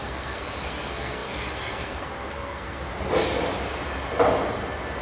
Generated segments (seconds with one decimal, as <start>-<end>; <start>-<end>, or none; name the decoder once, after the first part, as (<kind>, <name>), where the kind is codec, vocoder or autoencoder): 0.0-2.9 (codec, SNAC)

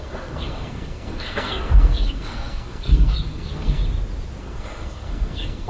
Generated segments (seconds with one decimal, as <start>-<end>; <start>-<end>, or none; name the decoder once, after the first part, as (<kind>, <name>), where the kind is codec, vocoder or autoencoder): 0.0-3.8 (codec, SNAC); 4.4-5.7

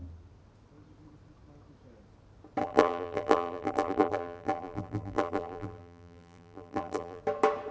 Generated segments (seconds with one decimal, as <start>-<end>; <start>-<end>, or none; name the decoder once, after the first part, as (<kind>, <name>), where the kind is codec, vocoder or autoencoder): 2.6-7.2 (vocoder, BigVGAN v2)

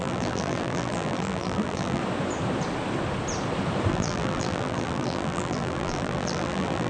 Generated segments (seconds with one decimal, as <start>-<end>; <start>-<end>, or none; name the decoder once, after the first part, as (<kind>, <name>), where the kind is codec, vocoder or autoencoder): 0.0-2.0 (vocoder, BigVGAN v2); 3.9-6.9